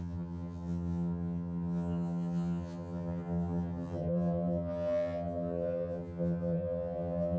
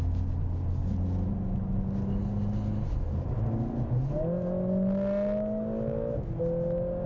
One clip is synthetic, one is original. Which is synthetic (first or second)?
first